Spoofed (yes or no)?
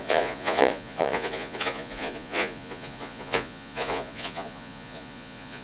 yes